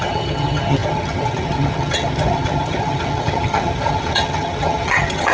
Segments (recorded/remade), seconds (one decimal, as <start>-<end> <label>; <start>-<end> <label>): 0.0-5.3 remade